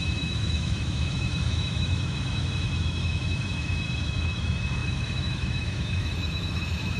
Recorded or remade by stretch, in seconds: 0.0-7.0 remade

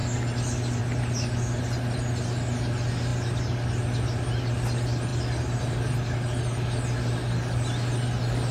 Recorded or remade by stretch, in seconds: 0.0-8.5 recorded

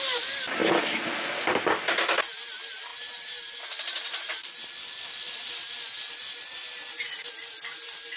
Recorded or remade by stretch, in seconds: 0.0-8.2 recorded

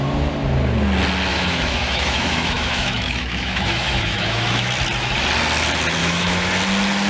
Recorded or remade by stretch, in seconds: 0.0-1.3 recorded; 1.3-4.7 remade; 4.7-6.0 recorded; 6.0-6.5 remade; 6.5-7.1 recorded

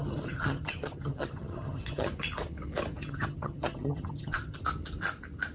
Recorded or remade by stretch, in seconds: 0.0-2.1 remade; 2.1-3.0 recorded; 3.0-4.6 remade; 4.6-5.5 recorded

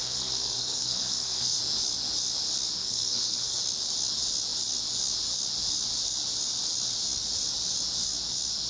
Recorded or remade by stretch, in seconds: 0.0-1.6 remade; 1.6-2.8 recorded; 2.8-3.6 remade; 3.6-8.7 recorded